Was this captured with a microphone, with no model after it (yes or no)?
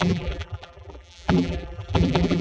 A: no